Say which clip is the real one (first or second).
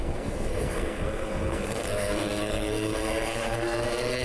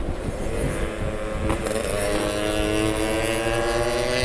second